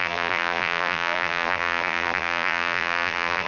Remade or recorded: remade